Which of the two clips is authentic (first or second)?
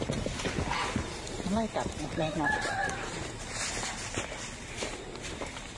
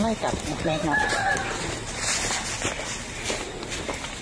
second